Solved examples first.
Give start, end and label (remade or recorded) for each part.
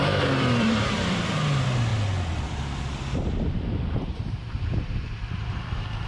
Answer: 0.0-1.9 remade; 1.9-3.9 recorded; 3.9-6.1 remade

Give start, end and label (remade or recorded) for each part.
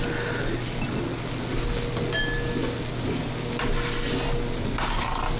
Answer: 0.0-5.4 recorded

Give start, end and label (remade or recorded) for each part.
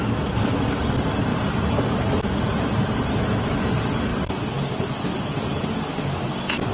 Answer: 0.0-1.3 recorded; 1.3-2.2 remade; 2.2-4.1 recorded; 4.1-5.1 remade; 5.1-6.7 recorded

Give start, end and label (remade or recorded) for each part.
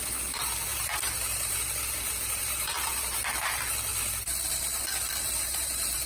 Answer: 0.0-3.9 remade; 3.9-5.1 recorded; 5.1-6.1 remade